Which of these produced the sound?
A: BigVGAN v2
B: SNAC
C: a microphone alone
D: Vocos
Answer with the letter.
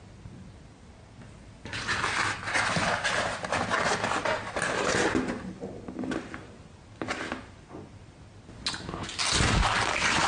C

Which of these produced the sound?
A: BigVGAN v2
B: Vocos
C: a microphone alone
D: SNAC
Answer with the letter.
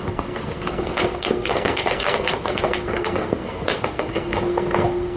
D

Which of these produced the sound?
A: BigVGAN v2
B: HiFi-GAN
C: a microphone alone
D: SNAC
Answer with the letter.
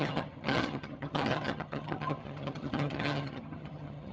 B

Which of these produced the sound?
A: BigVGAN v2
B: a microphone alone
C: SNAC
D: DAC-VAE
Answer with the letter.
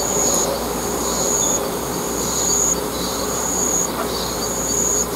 A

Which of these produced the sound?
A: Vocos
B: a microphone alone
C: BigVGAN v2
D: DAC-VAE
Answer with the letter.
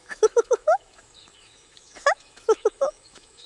D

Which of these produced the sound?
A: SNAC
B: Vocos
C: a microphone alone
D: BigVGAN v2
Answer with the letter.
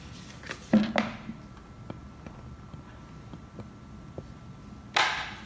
C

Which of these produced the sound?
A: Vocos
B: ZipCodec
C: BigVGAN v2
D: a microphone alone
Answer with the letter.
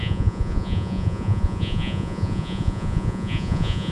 A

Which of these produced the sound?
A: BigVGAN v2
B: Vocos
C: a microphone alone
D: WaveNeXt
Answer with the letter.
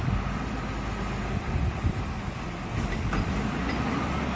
A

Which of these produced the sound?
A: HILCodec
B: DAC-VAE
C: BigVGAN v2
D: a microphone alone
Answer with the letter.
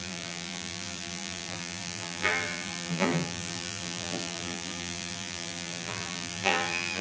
C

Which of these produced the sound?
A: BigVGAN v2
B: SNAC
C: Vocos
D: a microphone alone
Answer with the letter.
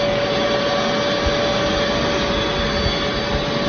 D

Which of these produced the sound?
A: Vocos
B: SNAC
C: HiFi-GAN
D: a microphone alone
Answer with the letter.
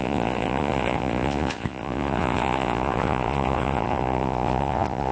A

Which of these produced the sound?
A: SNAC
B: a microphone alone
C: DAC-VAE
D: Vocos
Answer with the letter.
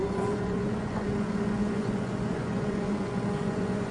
D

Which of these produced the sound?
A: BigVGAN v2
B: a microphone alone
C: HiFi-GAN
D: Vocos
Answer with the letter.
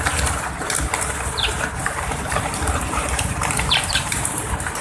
A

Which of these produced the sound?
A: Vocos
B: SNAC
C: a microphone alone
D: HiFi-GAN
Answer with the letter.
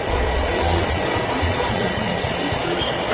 A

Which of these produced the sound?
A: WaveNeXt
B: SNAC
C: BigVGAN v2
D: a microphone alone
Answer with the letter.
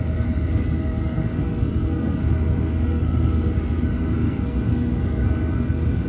B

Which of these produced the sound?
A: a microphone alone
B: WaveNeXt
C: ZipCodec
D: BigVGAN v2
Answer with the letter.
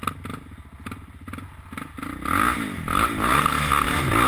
A